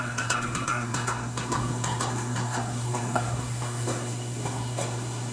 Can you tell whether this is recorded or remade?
remade